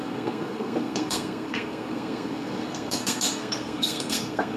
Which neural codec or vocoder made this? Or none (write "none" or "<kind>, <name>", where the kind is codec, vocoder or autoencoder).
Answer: codec, SNAC